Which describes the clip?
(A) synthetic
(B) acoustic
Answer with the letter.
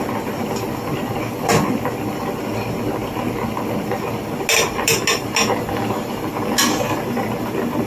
B